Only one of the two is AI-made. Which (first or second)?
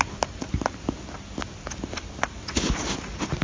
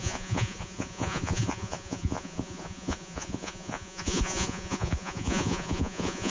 second